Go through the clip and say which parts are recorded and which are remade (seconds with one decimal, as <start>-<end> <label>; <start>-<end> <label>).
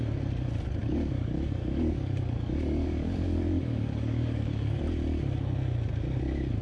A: 0.0-0.8 recorded; 0.8-4.8 remade; 4.8-6.6 recorded